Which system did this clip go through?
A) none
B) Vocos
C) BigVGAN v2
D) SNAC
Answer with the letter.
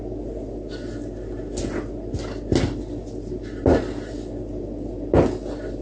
A